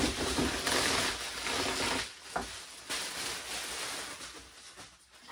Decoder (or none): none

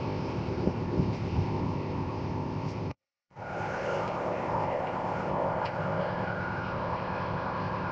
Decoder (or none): codec, ZipCodec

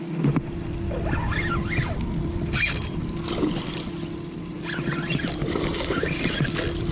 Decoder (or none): none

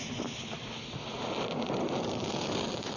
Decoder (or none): none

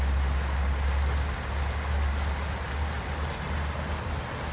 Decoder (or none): none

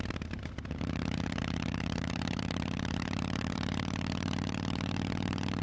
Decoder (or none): vocoder, BigVGAN v2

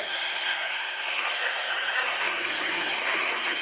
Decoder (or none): codec, SNAC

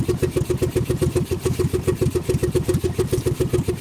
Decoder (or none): none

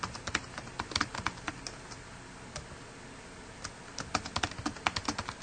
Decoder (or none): none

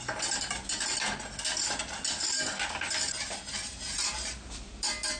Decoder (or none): none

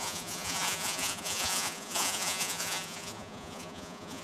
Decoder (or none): vocoder, Vocos